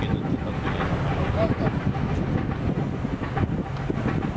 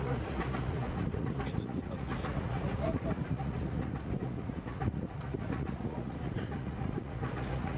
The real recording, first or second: first